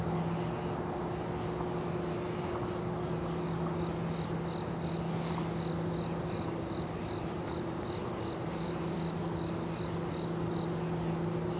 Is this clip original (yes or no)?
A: yes